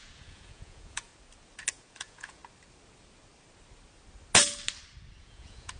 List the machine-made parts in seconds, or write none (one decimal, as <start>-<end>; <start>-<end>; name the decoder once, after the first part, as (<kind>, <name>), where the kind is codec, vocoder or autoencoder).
0.0-1.1 (vocoder, Vocos); 1.7-2.4; 5.2-5.8